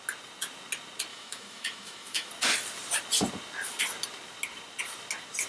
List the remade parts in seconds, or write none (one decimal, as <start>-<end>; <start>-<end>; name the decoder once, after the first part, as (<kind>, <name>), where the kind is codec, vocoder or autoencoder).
1.1-2.3 (autoencoder, DAC-VAE)